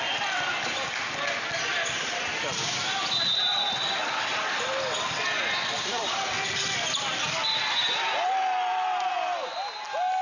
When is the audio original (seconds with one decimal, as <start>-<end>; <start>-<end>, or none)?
0.0-10.2

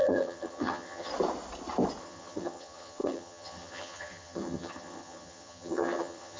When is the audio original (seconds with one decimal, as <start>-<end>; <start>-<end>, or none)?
1.1-2.0

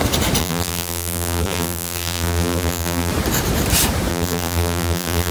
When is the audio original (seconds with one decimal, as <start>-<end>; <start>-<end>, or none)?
0.0-0.4; 3.1-4.1

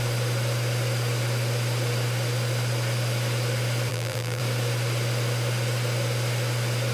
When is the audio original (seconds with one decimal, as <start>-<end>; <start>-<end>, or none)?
0.0-3.9; 4.4-6.9

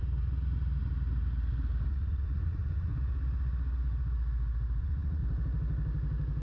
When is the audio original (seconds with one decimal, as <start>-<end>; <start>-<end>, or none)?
0.0-1.9; 2.9-4.8; 5.2-6.4

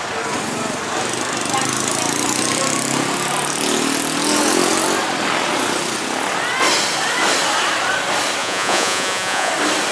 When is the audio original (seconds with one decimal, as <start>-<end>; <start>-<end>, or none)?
0.0-8.4; 9.5-9.9

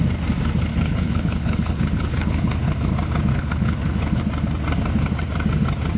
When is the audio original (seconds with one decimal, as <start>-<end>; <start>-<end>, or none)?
0.0-0.7; 2.9-3.3; 4.2-6.0